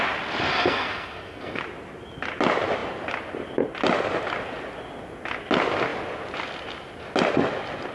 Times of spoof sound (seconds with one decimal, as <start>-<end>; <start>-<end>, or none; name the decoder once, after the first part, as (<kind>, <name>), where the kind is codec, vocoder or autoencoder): 0.5-1.6 (codec, SNAC)